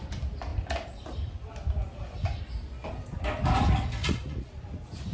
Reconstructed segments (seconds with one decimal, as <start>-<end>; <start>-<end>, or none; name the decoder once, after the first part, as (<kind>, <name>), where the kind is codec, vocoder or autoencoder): 4.0-4.6 (vocoder, Vocos)